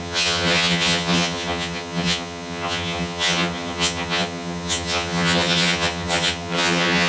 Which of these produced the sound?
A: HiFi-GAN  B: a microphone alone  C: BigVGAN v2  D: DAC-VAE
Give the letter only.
A